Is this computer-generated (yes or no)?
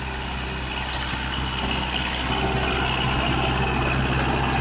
no